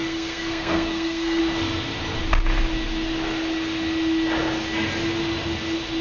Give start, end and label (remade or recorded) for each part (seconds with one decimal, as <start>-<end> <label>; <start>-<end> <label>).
0.0-1.4 remade; 1.4-6.0 recorded